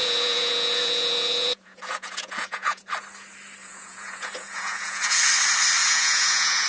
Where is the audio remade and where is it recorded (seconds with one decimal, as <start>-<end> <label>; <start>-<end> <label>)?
0.0-2.9 remade; 2.9-3.6 recorded; 3.6-5.2 remade; 5.2-5.8 recorded; 5.8-6.7 remade